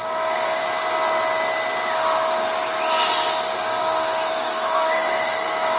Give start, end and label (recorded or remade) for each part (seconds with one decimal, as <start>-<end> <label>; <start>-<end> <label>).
0.0-0.6 remade; 0.6-3.6 recorded; 3.6-5.8 remade